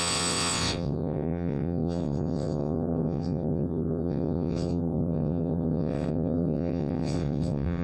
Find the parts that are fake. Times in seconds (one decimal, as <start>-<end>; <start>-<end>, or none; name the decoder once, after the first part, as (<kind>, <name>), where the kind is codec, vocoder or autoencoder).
0.0-7.8 (vocoder, WaveNeXt)